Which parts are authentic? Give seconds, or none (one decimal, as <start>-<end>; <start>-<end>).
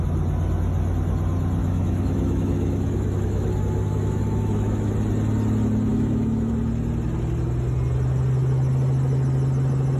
0.0-1.6; 4.9-5.9; 6.5-10.0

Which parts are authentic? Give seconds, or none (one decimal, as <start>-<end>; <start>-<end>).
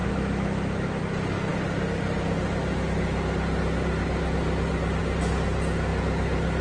1.0-6.6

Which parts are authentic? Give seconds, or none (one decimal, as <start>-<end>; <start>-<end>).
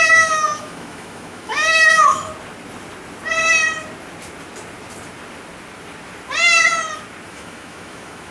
2.3-7.3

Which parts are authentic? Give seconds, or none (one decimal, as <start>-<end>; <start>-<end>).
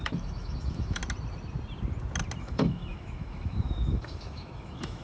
1.0-2.4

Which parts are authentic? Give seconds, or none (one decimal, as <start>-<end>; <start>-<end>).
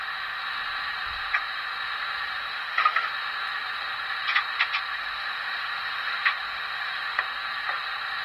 0.0-2.4; 3.1-4.9; 7.2-8.2